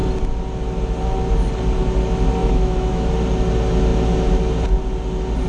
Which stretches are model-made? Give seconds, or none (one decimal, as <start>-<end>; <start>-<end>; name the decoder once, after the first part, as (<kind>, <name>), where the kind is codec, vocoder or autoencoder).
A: 2.4-3.1 (autoencoder, DAC-VAE)